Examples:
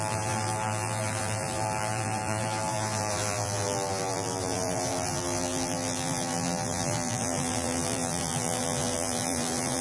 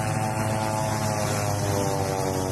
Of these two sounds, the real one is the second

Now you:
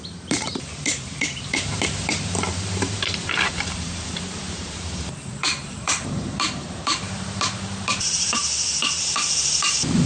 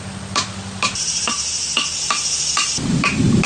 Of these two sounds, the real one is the second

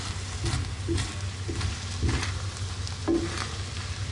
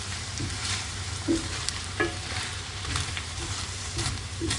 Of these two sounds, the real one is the first